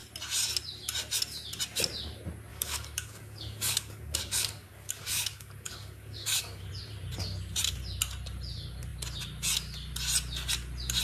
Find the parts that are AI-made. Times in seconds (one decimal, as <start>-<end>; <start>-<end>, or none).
2.5-6.7